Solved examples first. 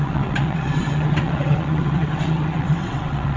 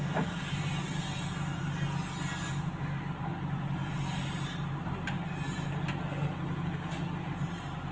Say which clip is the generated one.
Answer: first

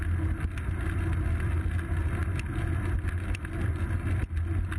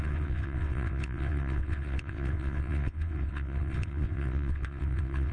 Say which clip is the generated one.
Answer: second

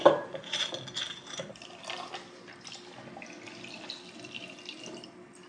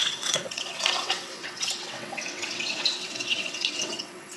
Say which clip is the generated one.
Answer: second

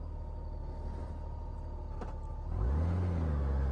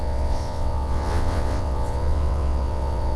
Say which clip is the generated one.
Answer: second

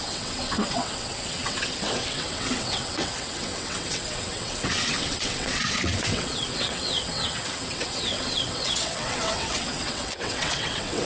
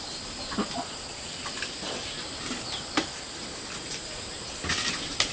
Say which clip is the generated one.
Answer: first